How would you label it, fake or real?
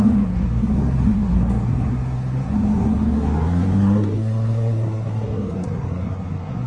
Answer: fake